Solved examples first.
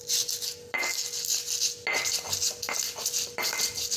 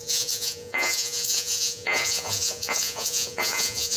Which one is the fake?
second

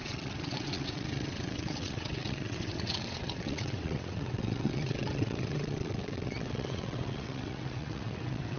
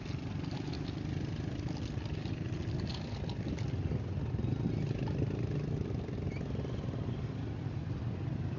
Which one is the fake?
first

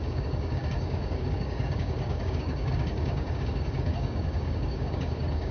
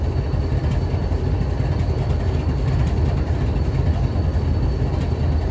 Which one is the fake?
first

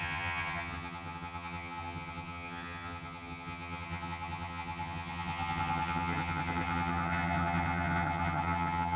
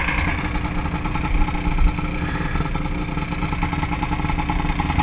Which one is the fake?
first